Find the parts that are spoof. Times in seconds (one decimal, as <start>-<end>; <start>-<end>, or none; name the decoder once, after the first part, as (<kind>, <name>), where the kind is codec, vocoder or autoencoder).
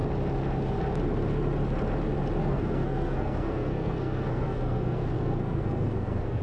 2.4-6.4 (codec, SNAC)